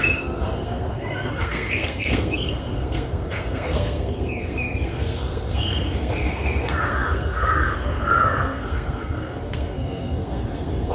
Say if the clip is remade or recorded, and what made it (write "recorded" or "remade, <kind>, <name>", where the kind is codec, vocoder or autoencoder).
remade, codec, SNAC